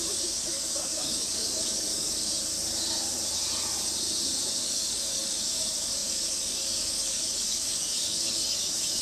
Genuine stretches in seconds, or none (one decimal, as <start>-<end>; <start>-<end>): 2.3-4.5